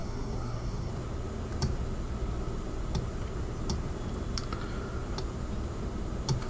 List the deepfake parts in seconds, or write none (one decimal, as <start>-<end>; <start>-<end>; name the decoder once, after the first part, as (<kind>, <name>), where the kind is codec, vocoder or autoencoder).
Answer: 0.0-0.9 (codec, SNAC)